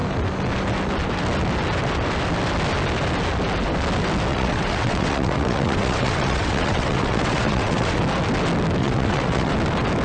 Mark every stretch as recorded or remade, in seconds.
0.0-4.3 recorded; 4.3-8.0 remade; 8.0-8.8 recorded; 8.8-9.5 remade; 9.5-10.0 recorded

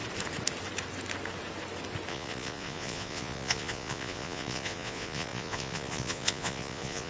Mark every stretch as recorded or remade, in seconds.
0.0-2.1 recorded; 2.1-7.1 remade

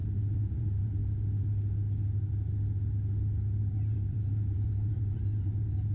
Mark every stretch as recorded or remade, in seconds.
0.0-1.0 remade; 1.0-3.6 recorded; 3.6-5.9 remade

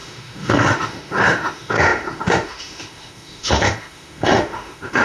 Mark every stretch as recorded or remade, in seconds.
0.0-5.0 remade